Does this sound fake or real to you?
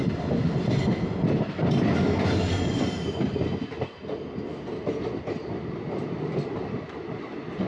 real